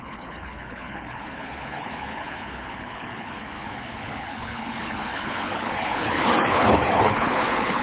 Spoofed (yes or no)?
yes